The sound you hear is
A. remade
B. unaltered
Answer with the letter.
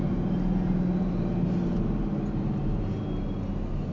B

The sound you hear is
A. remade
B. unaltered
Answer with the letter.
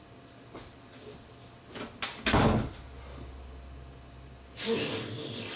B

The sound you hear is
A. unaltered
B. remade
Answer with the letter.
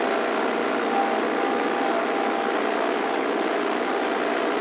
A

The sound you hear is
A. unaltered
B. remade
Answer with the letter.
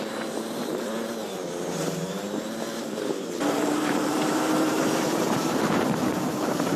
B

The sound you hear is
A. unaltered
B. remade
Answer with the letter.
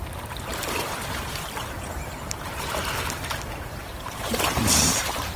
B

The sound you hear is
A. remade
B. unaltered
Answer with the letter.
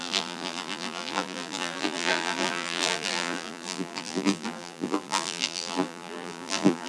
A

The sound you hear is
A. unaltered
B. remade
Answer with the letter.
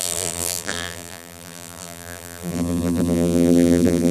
B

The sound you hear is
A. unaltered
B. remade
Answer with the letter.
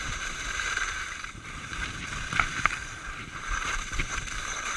B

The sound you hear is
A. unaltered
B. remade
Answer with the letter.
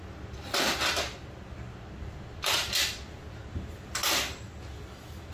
A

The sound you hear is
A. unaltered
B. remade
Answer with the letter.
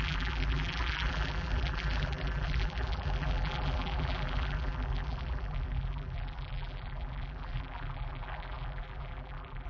B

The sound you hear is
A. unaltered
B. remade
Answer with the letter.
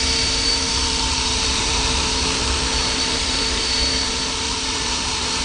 B